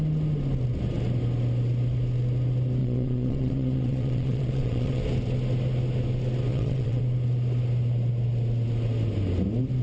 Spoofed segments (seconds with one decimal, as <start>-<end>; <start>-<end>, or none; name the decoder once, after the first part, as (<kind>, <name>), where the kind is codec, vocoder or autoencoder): 2.8-5.0 (vocoder, WaveNeXt); 6.5-7.0